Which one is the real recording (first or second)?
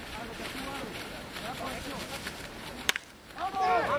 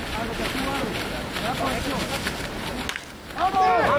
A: second